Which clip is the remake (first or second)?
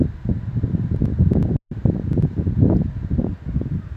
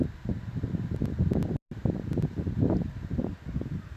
second